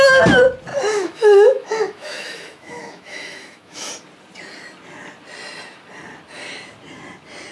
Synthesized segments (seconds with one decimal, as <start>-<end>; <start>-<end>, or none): 0.7-3.9